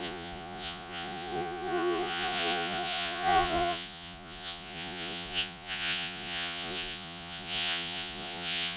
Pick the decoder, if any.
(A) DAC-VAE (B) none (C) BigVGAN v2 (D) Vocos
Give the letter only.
D